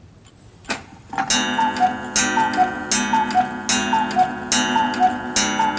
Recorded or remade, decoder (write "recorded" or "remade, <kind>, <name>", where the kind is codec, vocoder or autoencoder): recorded